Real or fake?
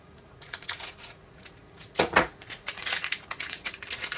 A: fake